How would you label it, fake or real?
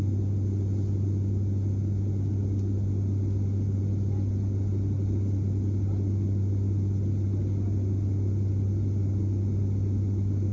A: real